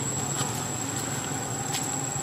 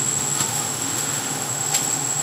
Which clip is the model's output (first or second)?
second